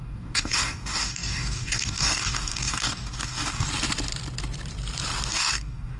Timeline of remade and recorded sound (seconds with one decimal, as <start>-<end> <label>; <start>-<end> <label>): 0.0-3.7 remade; 3.7-5.3 recorded; 5.3-6.0 remade